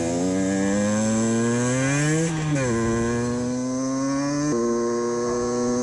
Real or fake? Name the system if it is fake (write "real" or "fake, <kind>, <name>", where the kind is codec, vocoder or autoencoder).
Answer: real